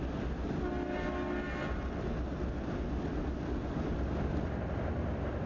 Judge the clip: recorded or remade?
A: recorded